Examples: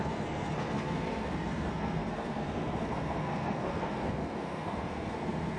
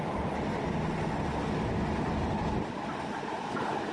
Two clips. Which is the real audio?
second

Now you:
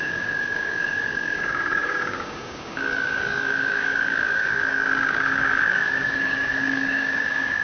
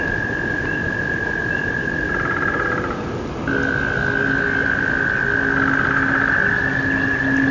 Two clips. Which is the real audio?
second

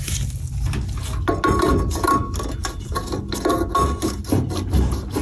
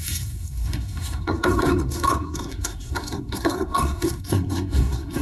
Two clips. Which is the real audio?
first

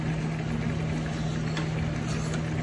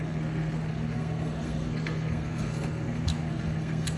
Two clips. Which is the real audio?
first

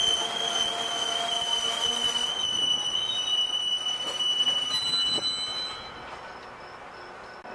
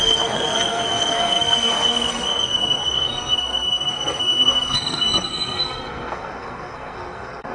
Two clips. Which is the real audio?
first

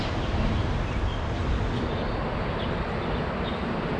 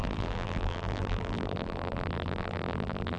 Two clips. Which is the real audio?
first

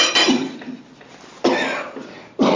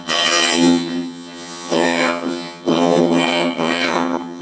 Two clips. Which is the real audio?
first